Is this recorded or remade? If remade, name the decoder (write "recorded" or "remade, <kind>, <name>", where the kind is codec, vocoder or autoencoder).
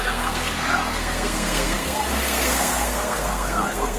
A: remade, codec, SNAC